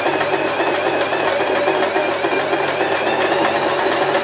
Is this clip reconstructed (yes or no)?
no